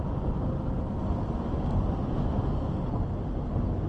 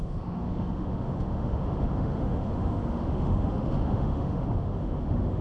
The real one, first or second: first